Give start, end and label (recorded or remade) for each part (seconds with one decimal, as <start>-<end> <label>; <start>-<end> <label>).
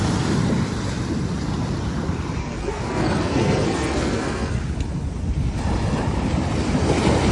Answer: 0.0-2.4 recorded; 2.4-4.6 remade; 4.6-7.3 recorded